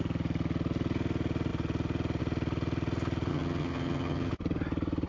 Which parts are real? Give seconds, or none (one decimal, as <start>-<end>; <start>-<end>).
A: 0.0-3.3; 4.3-5.1